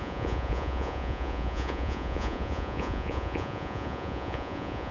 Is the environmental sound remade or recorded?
remade